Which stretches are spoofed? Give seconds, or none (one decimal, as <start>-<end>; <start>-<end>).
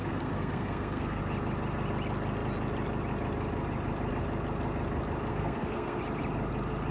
0.0-1.2; 5.3-6.0